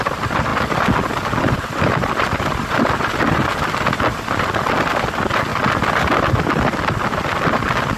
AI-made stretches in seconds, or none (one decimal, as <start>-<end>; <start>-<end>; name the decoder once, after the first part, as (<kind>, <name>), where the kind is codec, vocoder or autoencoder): none